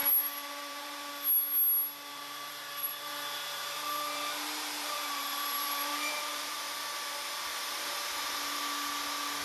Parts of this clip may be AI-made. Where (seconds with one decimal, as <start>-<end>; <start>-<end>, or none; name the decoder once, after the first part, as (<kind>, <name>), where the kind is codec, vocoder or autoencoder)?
0.0-1.1 (vocoder, BigVGAN v2); 2.1-6.5